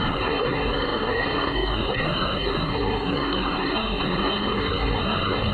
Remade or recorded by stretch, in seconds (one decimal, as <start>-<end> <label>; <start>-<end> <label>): 0.0-5.5 remade